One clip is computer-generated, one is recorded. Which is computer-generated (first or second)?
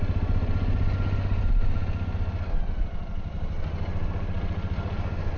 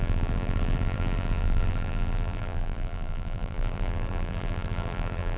second